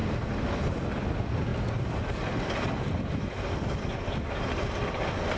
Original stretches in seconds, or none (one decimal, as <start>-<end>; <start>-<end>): 0.0-5.4